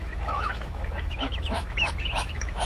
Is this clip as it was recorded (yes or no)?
no